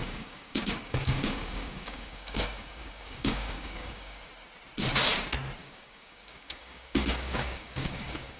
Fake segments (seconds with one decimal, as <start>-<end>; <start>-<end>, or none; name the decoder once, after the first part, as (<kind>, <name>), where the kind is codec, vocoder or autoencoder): 0.0-4.3 (codec, DAC); 5.6-8.4